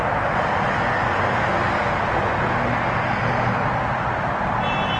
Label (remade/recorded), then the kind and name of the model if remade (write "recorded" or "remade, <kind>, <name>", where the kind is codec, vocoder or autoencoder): recorded